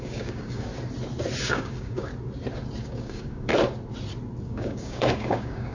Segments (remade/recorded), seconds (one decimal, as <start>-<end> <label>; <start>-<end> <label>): 0.0-0.7 remade; 0.7-1.4 recorded; 1.4-2.1 remade; 2.1-2.8 recorded; 2.8-3.5 remade; 3.5-4.4 recorded; 4.4-5.7 remade